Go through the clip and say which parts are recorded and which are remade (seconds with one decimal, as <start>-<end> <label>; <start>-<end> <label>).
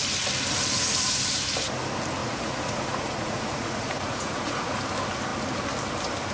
0.0-2.2 recorded; 2.2-4.8 remade; 4.8-6.3 recorded